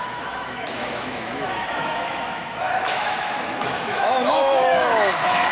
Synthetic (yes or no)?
yes